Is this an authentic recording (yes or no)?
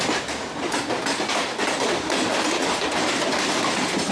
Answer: yes